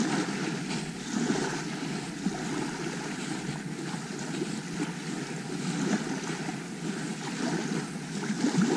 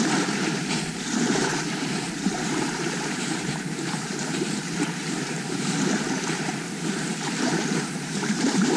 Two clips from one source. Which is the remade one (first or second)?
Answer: second